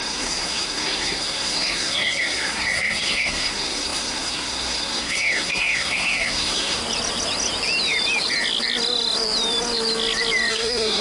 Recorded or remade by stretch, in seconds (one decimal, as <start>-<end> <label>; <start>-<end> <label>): 0.0-6.8 remade; 6.8-10.5 recorded; 10.5-11.0 remade